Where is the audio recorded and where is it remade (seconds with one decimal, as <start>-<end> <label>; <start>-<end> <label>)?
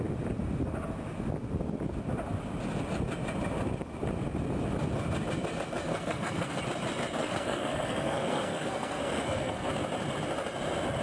0.0-5.9 recorded; 5.9-6.6 remade; 6.6-7.2 recorded; 7.2-9.7 remade; 9.7-11.0 recorded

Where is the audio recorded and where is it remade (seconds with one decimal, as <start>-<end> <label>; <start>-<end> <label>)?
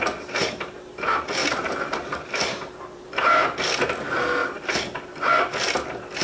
0.0-1.4 recorded; 1.4-2.0 remade; 2.0-2.4 recorded; 2.4-3.6 remade; 3.6-6.2 recorded